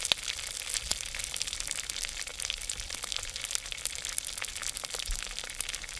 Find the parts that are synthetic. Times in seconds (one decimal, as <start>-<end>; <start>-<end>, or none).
none